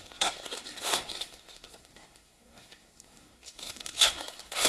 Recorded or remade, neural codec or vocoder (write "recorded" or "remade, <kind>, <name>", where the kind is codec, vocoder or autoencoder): remade, codec, SNAC